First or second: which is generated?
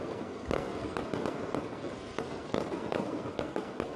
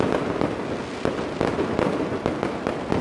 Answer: first